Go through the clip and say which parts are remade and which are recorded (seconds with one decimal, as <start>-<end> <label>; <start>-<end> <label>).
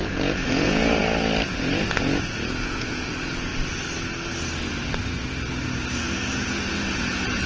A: 0.0-1.0 remade; 1.0-1.5 recorded; 1.5-3.5 remade; 3.5-5.9 recorded; 5.9-7.5 remade